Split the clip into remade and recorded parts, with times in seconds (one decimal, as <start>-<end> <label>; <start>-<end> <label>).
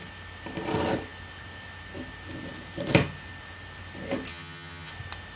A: 0.0-4.3 recorded; 4.3-4.9 remade; 4.9-5.4 recorded